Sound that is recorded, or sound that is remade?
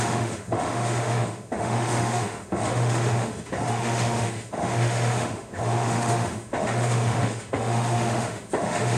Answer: remade